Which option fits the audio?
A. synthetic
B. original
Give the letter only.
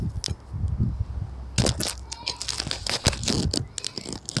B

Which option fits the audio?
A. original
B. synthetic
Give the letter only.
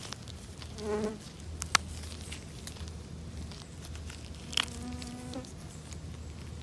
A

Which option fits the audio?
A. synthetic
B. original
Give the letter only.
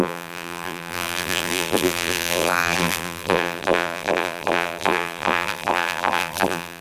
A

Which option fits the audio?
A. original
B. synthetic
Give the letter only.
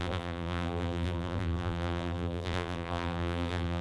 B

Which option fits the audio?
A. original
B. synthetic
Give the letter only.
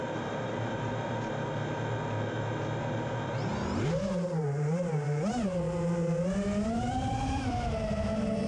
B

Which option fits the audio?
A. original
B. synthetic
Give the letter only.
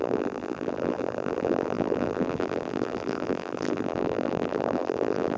B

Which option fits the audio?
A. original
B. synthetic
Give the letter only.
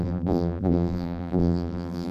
B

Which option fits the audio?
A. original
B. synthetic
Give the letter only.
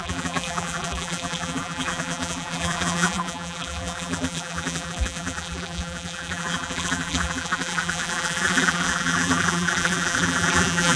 B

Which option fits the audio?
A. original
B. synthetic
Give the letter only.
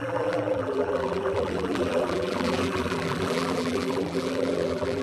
B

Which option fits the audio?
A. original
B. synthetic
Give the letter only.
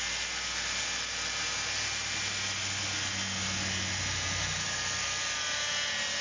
A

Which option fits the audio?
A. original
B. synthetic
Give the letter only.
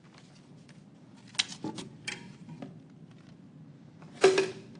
A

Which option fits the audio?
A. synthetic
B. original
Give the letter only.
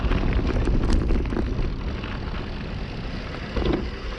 B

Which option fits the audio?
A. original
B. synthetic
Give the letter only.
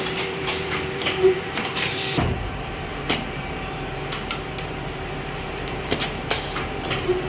B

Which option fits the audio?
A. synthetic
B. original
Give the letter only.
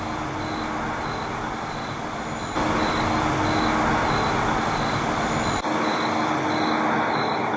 B